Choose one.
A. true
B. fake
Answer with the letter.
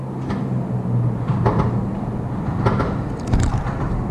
A